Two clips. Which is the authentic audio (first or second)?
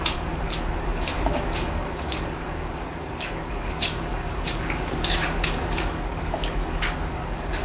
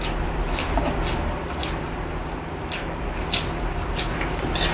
second